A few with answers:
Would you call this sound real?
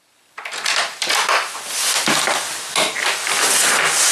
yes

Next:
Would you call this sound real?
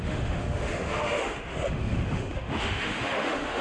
no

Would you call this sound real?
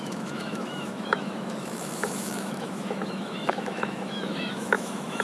no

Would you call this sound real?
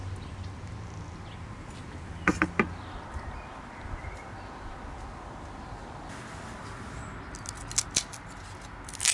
yes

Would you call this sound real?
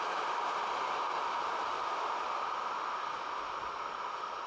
yes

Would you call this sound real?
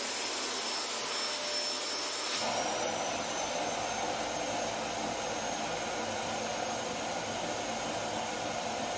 yes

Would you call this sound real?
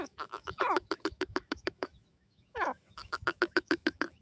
no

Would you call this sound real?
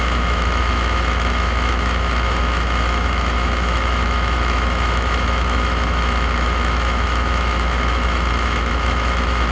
no